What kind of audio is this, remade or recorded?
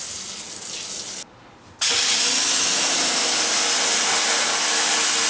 recorded